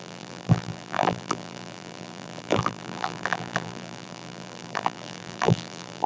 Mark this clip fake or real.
fake